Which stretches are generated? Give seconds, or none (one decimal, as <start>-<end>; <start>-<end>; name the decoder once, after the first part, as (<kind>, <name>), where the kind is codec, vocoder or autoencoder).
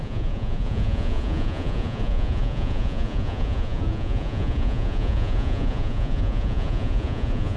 0.0-7.6 (vocoder, Vocos)